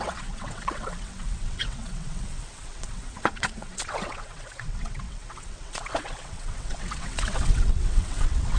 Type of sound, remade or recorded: remade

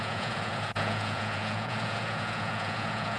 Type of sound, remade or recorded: remade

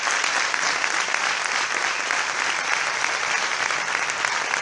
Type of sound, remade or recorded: recorded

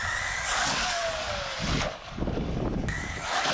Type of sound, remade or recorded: remade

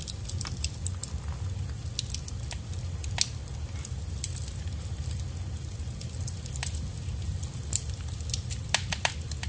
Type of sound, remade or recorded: recorded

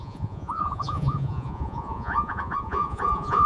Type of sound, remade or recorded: remade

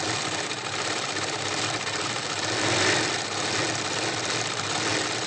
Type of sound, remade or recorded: recorded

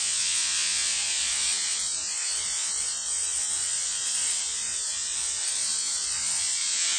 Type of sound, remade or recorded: remade